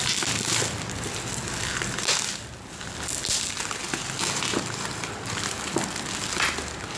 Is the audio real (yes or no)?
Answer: yes